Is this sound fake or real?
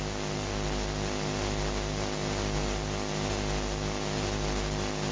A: real